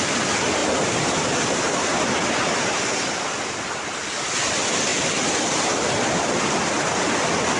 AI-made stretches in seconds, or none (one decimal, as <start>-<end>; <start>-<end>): 0.6-2.8